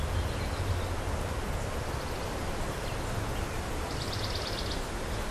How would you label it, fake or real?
real